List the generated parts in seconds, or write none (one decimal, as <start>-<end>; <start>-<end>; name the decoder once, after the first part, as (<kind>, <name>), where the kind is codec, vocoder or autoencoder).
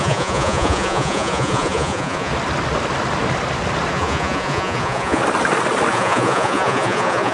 0.0-2.3 (vocoder, Vocos); 3.9-5.2; 5.9-7.3